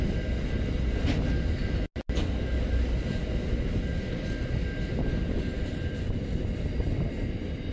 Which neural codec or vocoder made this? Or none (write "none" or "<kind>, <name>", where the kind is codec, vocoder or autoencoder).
none